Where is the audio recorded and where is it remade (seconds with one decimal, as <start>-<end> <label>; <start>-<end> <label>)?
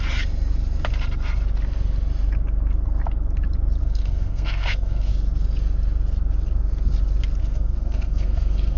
0.0-3.8 recorded; 3.8-5.1 remade; 5.1-7.4 recorded; 7.4-8.8 remade